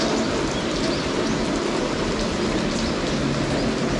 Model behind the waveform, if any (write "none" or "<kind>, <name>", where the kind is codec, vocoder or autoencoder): none